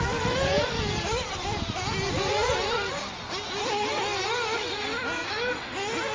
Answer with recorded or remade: recorded